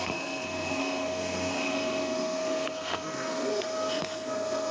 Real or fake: fake